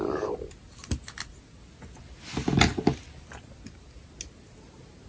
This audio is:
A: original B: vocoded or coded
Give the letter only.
A